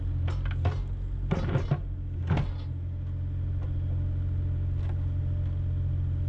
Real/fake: real